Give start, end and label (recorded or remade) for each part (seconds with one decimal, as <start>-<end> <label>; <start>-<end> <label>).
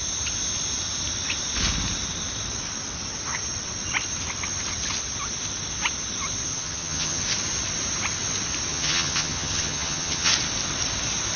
0.0-6.5 recorded; 6.5-7.2 remade; 7.2-8.7 recorded; 8.7-10.3 remade; 10.3-11.4 recorded